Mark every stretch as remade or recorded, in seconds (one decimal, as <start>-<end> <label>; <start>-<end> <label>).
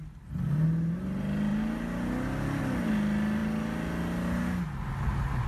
0.0-5.5 recorded